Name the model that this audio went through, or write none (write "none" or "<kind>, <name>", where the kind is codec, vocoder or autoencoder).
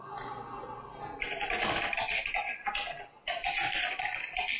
none